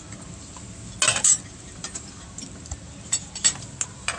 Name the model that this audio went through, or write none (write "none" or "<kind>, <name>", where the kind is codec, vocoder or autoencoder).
none